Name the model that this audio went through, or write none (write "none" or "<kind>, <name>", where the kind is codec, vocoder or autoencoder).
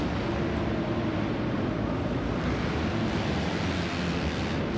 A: none